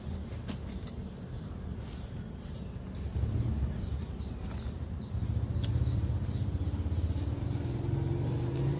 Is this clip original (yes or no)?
yes